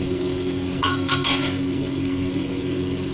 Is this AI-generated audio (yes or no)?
yes